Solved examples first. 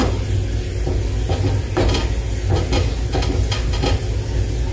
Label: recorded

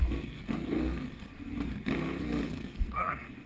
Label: remade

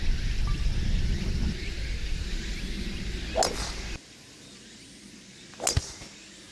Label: recorded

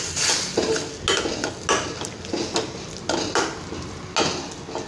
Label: recorded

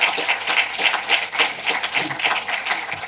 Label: recorded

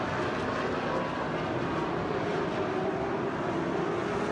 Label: recorded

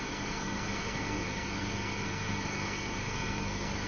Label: remade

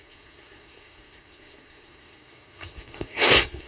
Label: remade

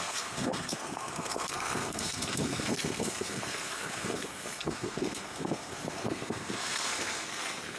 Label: remade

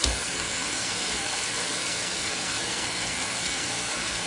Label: remade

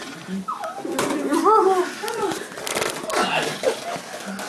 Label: recorded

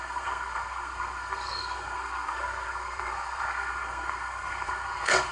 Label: remade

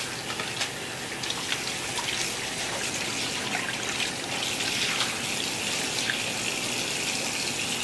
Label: recorded